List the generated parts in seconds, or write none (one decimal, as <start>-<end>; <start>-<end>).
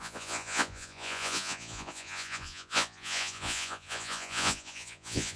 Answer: 0.0-5.4